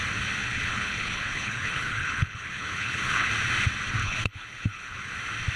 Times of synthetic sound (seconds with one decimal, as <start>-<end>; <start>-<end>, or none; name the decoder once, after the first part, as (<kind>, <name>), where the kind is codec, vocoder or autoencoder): 0.4-3.3 (codec, HILCodec); 4.0-5.1